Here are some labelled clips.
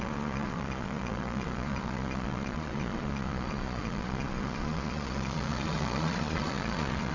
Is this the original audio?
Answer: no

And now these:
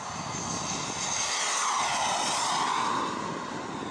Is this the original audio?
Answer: yes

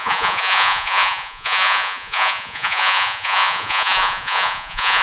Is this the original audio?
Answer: no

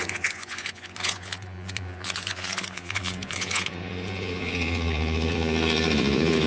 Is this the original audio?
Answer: no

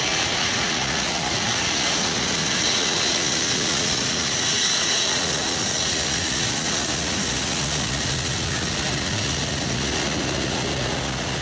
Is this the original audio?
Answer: no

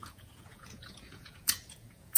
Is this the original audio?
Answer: no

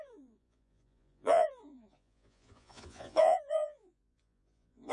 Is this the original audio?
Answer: no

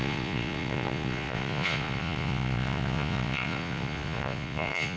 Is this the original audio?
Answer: no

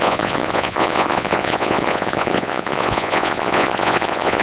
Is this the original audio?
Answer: no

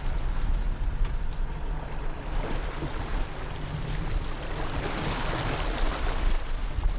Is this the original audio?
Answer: yes